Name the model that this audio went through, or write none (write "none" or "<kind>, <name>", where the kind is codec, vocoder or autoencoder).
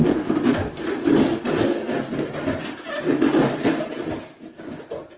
none